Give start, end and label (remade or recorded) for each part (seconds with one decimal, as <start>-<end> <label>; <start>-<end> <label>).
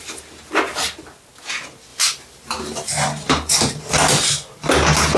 0.0-5.2 recorded